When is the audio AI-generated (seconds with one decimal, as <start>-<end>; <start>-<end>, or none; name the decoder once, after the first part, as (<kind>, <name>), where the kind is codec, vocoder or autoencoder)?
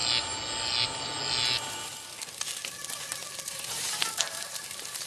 1.7-2.1 (vocoder, BigVGAN v2); 3.5-5.1